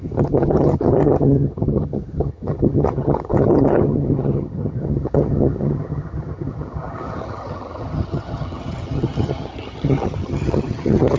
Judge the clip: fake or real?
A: fake